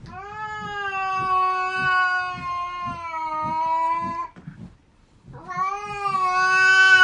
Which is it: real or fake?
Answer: real